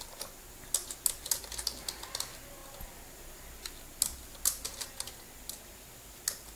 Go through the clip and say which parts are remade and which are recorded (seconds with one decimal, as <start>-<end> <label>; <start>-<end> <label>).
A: 0.0-6.6 recorded